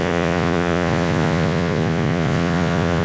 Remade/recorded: remade